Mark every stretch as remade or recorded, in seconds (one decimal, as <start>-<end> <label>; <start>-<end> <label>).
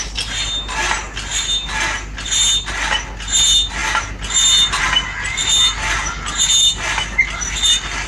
0.0-8.1 recorded